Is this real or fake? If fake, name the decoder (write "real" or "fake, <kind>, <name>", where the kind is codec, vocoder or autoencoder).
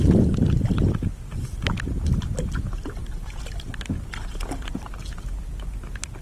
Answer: real